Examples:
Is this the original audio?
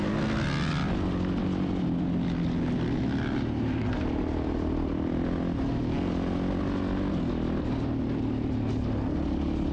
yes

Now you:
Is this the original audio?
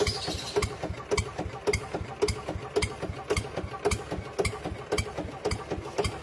yes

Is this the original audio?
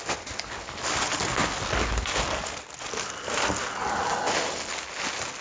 yes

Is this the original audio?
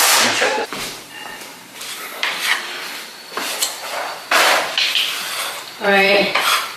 no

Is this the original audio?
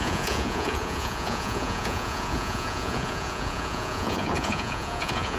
no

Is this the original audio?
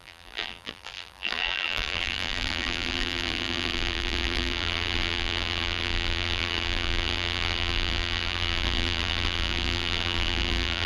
no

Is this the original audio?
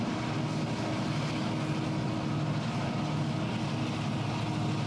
yes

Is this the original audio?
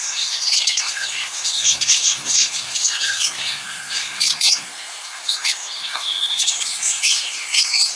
no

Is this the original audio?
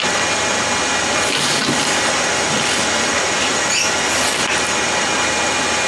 yes